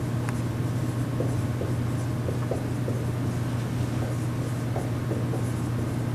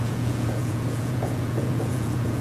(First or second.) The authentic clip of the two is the first